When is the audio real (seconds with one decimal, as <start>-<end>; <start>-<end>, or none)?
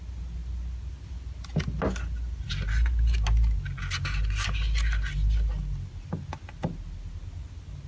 0.0-7.9